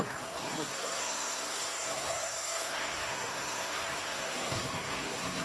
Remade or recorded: remade